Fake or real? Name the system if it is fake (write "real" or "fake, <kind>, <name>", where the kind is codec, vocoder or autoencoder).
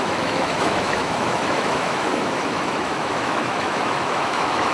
fake, autoencoder, DAC-VAE